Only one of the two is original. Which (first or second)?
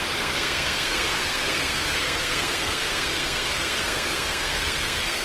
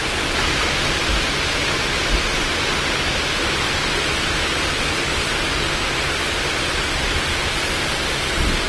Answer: second